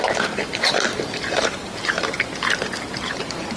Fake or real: fake